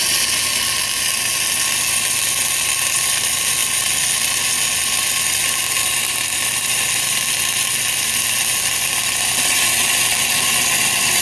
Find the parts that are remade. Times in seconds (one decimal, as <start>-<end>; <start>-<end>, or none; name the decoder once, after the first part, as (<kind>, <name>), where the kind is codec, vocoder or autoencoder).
none